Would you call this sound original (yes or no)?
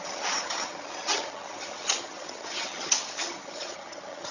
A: no